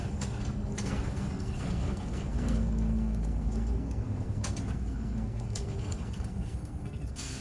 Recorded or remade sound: remade